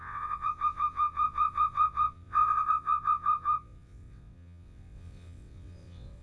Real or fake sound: fake